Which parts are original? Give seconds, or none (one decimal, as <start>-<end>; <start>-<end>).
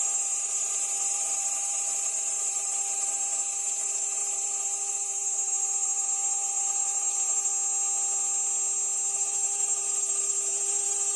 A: 7.5-9.1